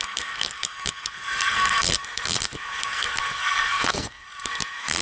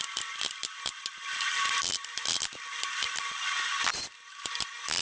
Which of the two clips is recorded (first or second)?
second